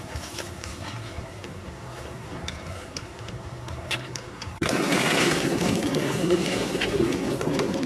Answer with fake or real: fake